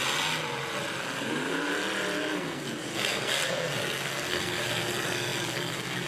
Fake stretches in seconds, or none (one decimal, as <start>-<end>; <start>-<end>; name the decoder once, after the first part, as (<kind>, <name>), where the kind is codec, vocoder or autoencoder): 1.0-1.7 (codec, SNAC); 2.3-6.1